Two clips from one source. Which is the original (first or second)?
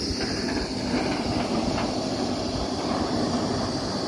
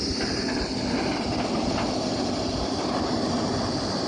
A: first